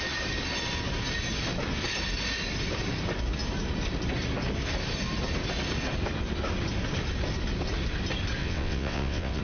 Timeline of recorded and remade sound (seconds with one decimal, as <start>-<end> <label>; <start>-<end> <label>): 0.0-8.4 recorded; 8.4-9.4 remade